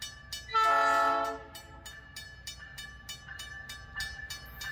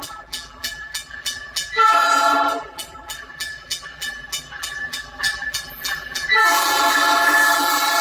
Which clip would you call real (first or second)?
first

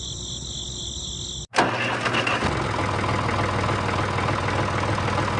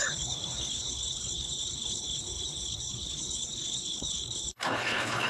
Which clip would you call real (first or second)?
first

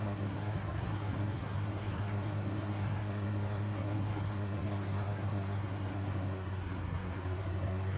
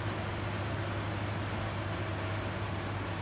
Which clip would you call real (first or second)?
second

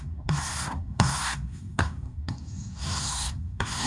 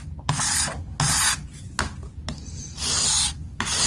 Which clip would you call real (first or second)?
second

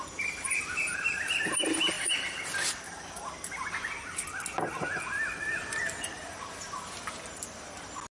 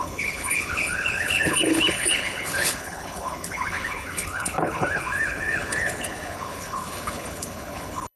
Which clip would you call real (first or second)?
first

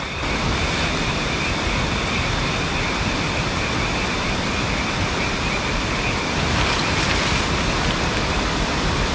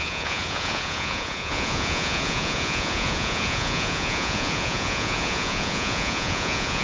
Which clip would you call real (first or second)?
first